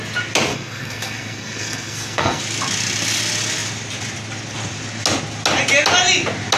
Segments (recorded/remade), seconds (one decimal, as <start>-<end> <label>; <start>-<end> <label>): 0.0-0.5 recorded; 0.5-2.4 remade; 2.4-6.6 recorded